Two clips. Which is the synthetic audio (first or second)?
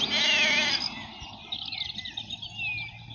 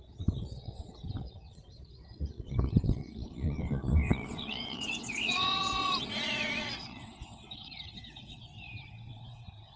second